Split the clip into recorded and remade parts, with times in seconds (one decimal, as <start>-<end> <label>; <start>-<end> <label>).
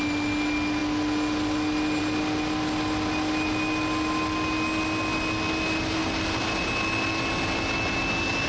0.0-8.5 recorded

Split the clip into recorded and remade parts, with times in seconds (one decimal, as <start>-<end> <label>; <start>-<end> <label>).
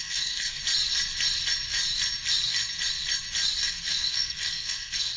0.0-0.6 remade; 0.6-3.7 recorded; 3.7-5.2 remade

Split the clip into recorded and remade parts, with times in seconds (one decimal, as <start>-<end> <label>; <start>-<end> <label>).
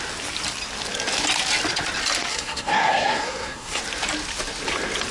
0.0-2.3 recorded; 2.3-3.8 remade; 3.8-5.1 recorded